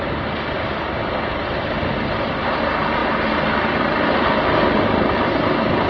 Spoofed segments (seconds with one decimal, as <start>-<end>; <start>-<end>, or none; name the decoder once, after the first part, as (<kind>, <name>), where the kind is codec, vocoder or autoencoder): 1.3-2.6 (vocoder, BigVGAN v2)